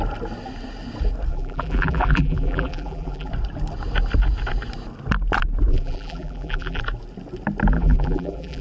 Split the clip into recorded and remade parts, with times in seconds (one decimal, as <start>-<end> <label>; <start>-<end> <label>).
0.0-1.3 recorded; 1.3-3.3 remade; 3.3-5.7 recorded; 5.7-6.8 remade; 6.8-7.7 recorded; 7.7-8.6 remade

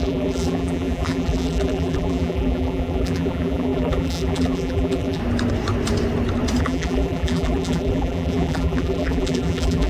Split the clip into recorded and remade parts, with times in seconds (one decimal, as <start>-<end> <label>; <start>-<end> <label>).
0.0-5.2 remade; 5.2-6.6 recorded; 6.6-9.9 remade